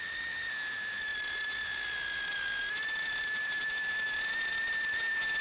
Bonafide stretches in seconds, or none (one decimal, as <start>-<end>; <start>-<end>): none